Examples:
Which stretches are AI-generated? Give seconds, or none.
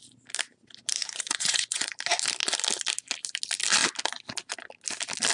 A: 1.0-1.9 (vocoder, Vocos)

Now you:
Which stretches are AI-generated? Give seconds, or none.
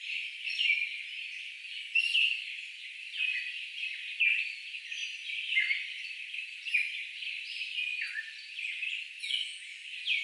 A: none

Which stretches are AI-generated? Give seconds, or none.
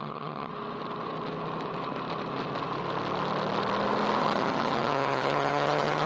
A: 0.0-0.5 (vocoder, HiFi-GAN); 4.2-6.1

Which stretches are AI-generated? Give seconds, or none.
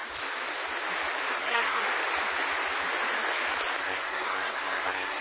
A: 1.4-1.8 (codec, SNAC); 3.8-5.2